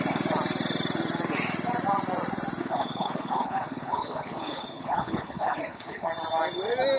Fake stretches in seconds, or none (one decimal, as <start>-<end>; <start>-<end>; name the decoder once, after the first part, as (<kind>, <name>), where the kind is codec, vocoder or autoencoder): 2.6-6.1 (codec, HILCodec)

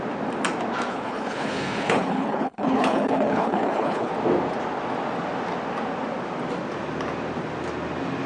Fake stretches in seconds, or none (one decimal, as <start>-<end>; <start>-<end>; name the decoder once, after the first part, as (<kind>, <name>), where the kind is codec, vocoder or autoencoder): 0.9-4.1 (codec, HILCodec)